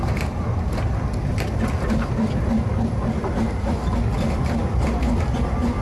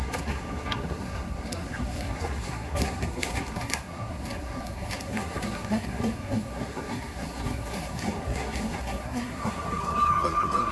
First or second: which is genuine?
first